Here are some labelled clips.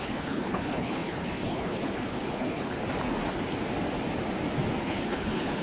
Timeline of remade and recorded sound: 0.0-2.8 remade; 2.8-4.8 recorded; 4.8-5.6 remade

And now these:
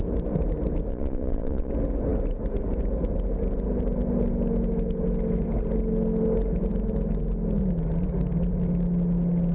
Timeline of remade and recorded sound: 0.0-0.9 recorded; 0.9-1.7 remade; 1.7-9.5 recorded

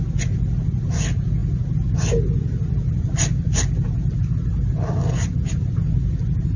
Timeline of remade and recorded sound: 0.0-6.6 recorded

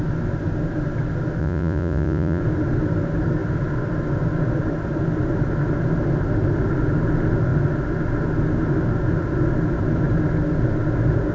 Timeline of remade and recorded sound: 0.0-1.4 recorded; 1.4-2.4 remade; 2.4-11.3 recorded

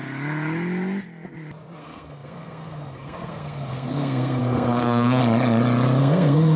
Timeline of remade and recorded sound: 0.0-1.8 recorded; 1.8-5.2 remade; 5.2-6.0 recorded; 6.0-6.6 remade

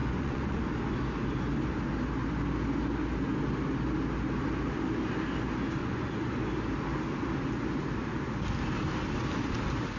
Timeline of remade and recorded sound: 0.0-0.6 remade; 0.6-5.8 recorded; 5.8-6.4 remade; 6.4-10.0 recorded

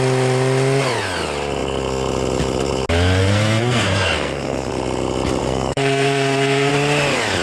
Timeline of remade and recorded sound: 0.0-3.2 recorded; 3.2-4.7 remade; 4.7-5.4 recorded; 5.4-6.7 remade; 6.7-7.4 recorded